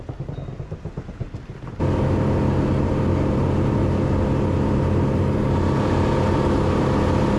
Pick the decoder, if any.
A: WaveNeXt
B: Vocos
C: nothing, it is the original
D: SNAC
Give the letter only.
C